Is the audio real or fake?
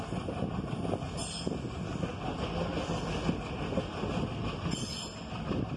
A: real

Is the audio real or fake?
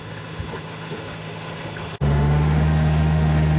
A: fake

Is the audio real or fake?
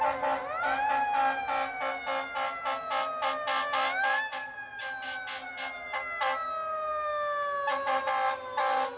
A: real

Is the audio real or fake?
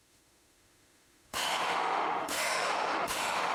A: fake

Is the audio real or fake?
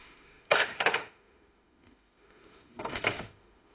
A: fake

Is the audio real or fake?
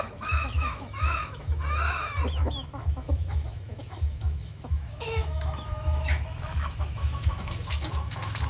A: fake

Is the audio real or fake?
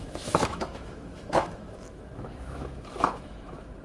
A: fake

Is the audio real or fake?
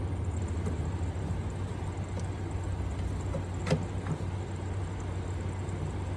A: real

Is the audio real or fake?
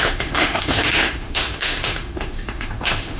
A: fake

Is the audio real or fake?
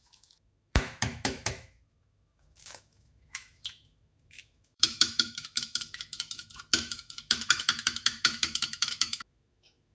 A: fake